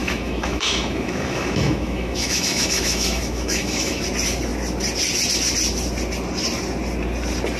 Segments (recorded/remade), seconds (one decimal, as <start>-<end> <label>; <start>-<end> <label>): 0.0-4.0 remade; 4.0-7.6 recorded